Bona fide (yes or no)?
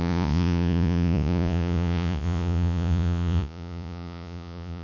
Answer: no